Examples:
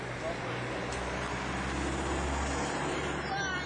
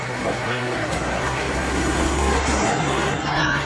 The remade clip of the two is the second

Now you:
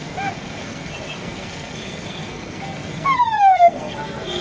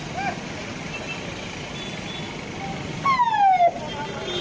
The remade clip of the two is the first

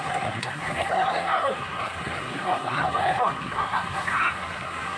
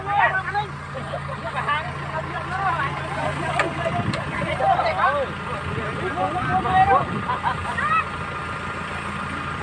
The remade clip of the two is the first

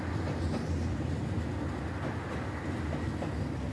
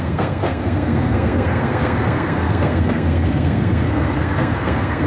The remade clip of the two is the second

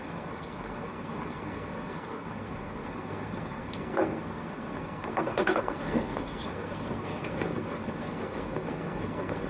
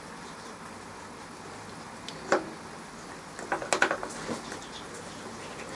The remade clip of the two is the first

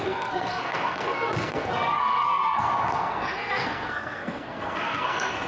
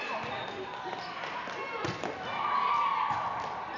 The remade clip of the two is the first